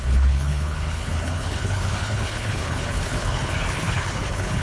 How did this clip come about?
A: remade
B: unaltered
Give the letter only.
A